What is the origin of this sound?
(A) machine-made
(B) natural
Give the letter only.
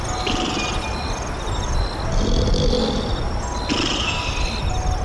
B